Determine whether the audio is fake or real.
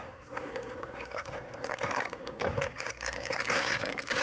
fake